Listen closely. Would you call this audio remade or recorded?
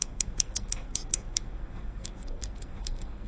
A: remade